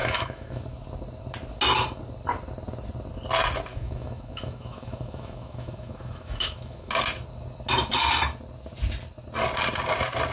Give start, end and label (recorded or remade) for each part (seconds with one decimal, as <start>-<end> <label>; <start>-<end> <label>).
0.0-0.6 remade; 0.6-3.7 recorded; 3.7-6.9 remade; 6.9-10.3 recorded